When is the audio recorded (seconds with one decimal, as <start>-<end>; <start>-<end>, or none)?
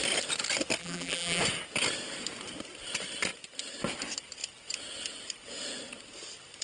0.0-0.8; 1.4-6.6